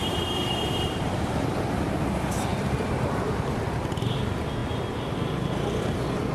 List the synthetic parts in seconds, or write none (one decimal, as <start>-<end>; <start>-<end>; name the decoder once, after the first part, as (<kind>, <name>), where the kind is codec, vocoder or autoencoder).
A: 0.0-2.0 (vocoder, BigVGAN v2)